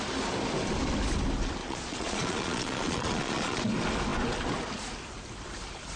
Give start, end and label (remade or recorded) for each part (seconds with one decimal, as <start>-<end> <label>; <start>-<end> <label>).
0.0-1.6 recorded; 1.6-3.6 remade; 3.6-6.0 recorded